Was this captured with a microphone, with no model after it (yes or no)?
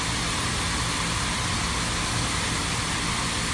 yes